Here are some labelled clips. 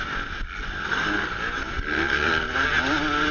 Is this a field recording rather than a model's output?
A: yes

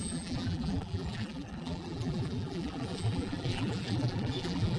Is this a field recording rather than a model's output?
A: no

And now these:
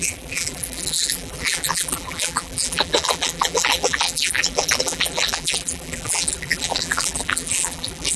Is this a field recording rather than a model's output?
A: no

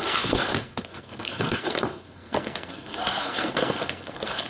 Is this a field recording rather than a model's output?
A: no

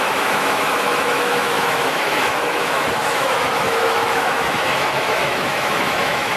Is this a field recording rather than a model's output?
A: no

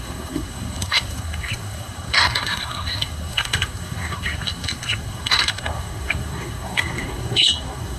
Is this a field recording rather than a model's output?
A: no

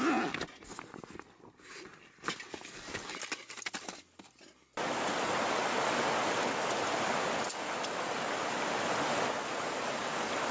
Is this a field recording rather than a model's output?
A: yes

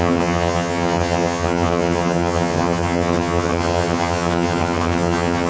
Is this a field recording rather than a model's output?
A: no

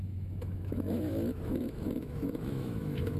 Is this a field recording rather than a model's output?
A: no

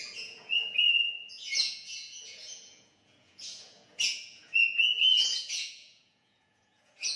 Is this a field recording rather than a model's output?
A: no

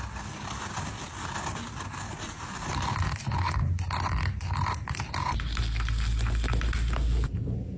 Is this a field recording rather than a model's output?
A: yes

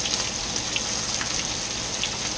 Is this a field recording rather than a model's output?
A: yes